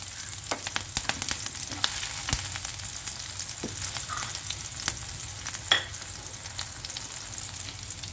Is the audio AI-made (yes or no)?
no